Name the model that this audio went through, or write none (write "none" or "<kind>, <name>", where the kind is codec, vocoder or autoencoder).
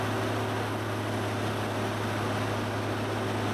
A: none